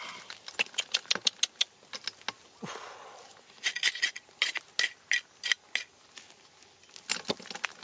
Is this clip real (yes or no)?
yes